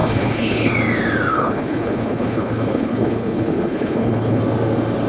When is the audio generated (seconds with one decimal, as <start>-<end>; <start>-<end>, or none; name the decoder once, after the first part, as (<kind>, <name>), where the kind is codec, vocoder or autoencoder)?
0.0-0.7 (codec, HILCodec); 1.3-4.4